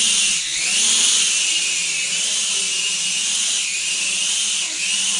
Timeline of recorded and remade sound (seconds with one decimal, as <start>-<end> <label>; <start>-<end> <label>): 0.0-5.2 recorded